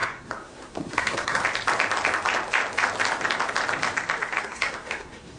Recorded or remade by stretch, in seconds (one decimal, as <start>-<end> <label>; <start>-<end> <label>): 0.0-1.4 remade; 1.4-4.4 recorded; 4.4-5.4 remade